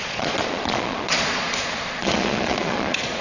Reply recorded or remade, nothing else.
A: remade